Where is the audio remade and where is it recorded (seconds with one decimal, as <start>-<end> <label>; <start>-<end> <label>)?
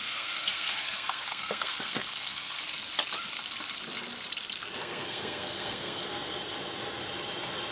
0.0-2.6 remade; 2.6-4.8 recorded; 4.8-6.0 remade; 6.0-7.7 recorded